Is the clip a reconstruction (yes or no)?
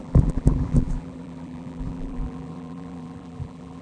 yes